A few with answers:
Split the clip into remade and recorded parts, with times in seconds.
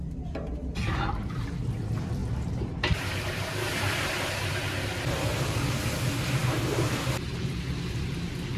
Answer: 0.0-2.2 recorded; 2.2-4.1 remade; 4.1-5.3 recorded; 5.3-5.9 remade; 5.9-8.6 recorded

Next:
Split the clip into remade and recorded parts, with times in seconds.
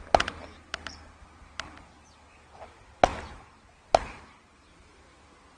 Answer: 0.0-5.6 recorded